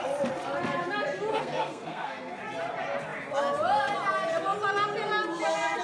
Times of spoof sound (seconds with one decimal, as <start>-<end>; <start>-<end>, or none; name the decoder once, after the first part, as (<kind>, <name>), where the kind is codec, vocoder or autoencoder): 1.3-2.4 (codec, SNAC)